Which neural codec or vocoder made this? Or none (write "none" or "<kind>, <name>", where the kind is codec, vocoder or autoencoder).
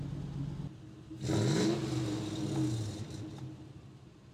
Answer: none